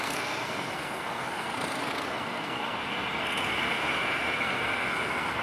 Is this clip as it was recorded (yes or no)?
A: no